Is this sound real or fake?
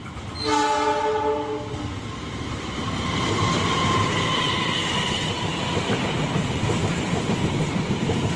real